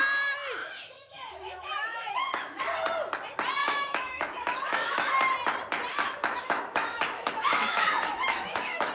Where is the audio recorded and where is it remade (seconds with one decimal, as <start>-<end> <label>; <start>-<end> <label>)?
0.0-0.6 recorded; 0.6-2.6 remade; 2.6-3.6 recorded; 3.6-5.1 remade; 5.1-5.9 recorded; 5.9-8.9 remade